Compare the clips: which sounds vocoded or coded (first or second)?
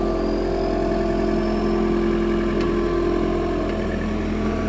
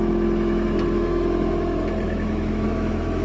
second